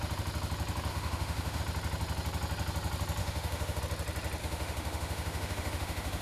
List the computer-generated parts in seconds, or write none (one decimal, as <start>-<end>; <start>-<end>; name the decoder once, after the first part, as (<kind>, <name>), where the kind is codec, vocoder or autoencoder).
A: 0.9-1.6 (autoencoder, DAC-VAE); 3.2-3.8; 4.4-6.2